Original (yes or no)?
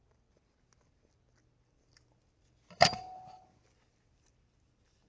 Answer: yes